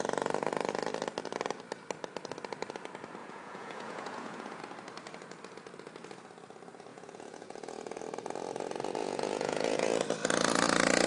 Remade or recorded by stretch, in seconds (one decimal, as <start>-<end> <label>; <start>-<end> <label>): 0.0-3.2 recorded; 3.2-4.6 remade; 4.6-6.9 recorded; 6.9-8.0 remade; 8.0-9.0 recorded; 9.0-9.9 remade; 9.9-11.1 recorded